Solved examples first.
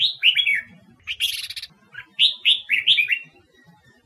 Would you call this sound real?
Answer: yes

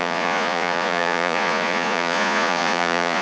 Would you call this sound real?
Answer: no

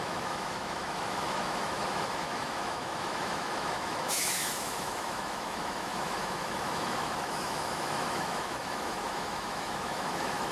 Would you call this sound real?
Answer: no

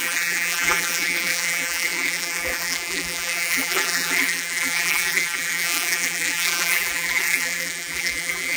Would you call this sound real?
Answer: no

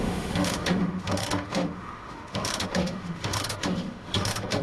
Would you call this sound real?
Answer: no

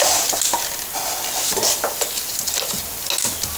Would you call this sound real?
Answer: yes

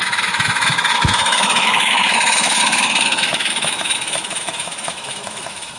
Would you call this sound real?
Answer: no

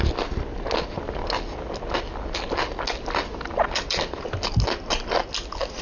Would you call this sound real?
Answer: yes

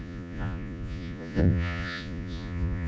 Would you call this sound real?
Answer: no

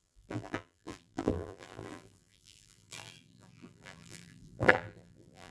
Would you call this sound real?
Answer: no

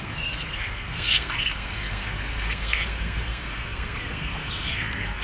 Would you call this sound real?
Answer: no